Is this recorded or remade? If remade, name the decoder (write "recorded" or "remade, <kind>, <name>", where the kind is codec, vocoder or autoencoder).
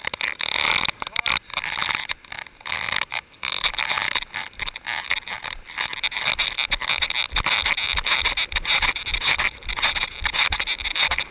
recorded